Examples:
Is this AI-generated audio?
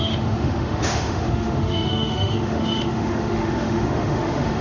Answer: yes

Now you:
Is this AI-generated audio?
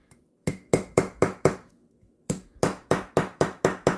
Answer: yes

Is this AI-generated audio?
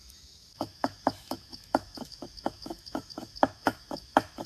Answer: yes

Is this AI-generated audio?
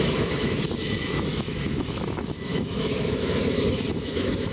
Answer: yes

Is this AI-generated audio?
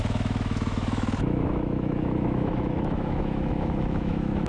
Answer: yes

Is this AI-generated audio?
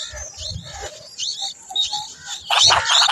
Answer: no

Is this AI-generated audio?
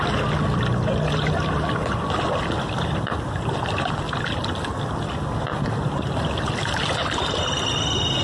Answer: no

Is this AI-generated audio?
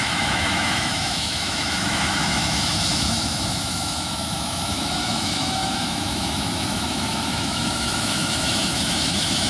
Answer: yes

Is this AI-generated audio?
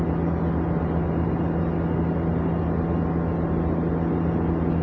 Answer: no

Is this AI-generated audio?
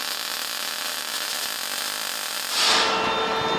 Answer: no